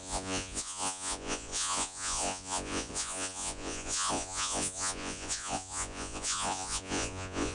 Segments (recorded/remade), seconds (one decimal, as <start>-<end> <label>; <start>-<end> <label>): 0.0-7.5 remade

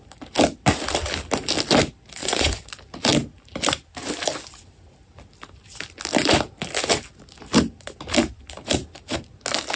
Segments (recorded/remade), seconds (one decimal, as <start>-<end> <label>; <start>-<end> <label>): 0.0-2.2 recorded; 2.2-2.7 remade; 2.7-9.8 recorded

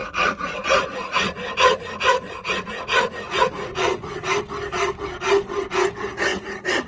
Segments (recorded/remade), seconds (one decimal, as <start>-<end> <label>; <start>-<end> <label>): 0.0-4.1 remade; 4.1-6.3 recorded; 6.3-6.9 remade

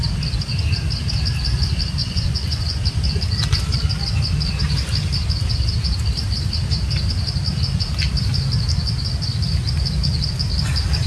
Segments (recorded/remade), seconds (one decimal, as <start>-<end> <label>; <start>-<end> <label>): 0.0-2.0 recorded; 2.0-2.8 remade; 2.8-11.1 recorded